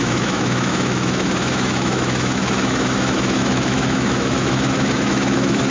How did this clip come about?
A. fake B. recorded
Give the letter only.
A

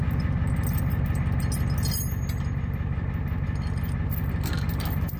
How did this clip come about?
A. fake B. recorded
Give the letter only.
B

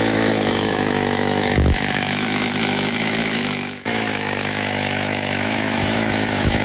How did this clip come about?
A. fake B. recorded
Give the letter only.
A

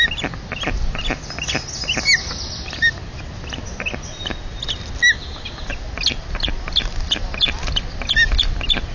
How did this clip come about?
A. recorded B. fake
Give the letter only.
A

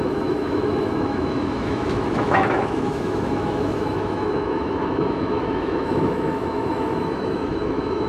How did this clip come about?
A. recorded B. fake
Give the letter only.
B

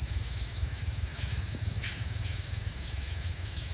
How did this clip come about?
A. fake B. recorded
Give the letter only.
A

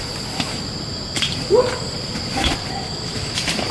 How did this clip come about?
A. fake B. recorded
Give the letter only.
B